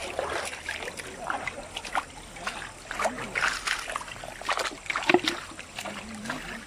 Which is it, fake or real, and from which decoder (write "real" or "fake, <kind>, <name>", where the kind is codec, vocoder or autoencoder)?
real